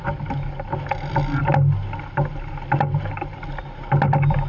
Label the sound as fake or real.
real